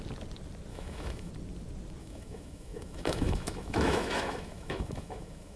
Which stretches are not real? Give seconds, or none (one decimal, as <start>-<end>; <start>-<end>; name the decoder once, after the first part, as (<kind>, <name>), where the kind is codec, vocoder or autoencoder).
0.7-1.3 (autoencoder, DAC-VAE); 2.0-5.6